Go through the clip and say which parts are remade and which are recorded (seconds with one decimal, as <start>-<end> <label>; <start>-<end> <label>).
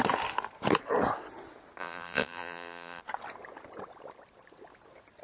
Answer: 0.0-1.8 recorded; 1.8-3.0 remade; 3.0-5.2 recorded